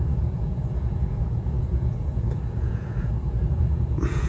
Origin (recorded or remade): remade